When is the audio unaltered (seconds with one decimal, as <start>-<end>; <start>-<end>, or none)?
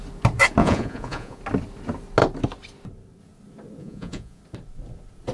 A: 0.0-0.6; 1.4-3.8; 4.4-5.3